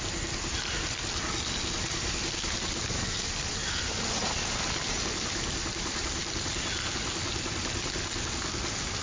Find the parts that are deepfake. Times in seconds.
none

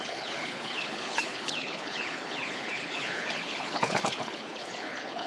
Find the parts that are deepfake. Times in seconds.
0.0-5.3 (codec, HILCodec)

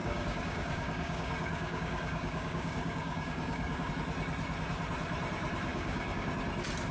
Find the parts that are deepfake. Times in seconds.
0.0-3.9 (codec, DAC); 5.7-6.3

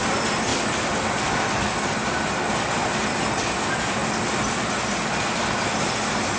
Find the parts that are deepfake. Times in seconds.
none

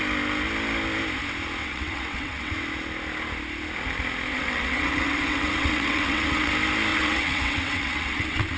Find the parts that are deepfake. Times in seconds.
1.6-2.5 (vocoder, WaveNeXt); 4.3-6.5; 6.9-8.6

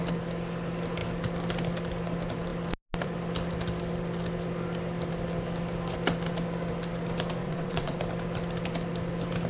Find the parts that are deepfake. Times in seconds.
7.4-8.0 (vocoder, WaveNeXt)

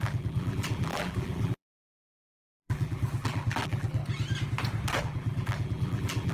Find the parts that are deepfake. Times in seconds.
0.0-4.0 (vocoder, BigVGAN v2); 5.0-6.3